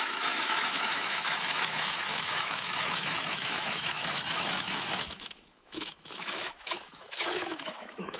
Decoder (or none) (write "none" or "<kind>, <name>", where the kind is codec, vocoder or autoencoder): autoencoder, DAC-VAE